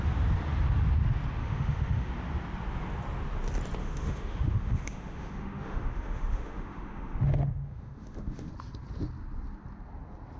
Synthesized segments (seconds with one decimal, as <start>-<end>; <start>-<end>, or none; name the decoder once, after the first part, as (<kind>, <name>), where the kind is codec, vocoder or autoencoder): 1.4-2.1 (autoencoder, DAC-VAE); 3.8-8.5